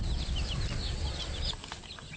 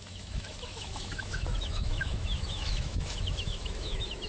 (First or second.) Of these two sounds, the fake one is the second